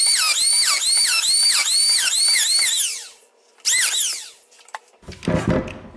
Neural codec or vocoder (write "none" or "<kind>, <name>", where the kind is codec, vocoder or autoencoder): none